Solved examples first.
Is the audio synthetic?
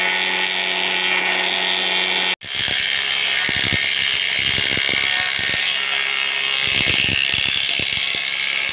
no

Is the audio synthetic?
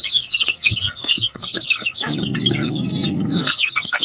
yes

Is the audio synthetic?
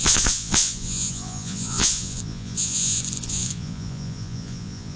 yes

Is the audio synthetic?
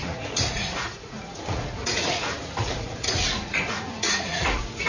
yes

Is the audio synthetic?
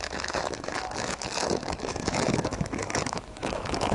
yes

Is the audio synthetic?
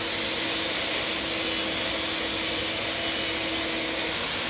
no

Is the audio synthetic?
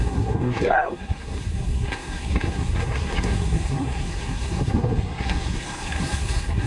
yes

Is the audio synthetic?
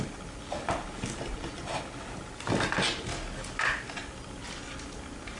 no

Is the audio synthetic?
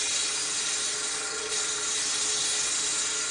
no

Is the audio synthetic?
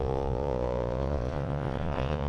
yes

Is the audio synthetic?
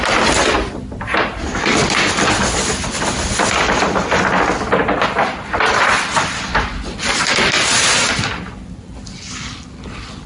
no